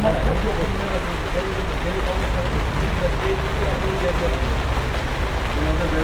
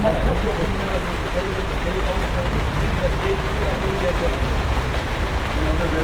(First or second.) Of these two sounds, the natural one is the first